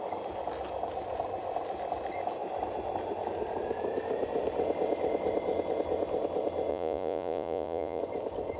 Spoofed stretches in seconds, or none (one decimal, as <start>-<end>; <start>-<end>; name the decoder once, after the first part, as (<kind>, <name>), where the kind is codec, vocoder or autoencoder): 6.7-8.0 (vocoder, Vocos)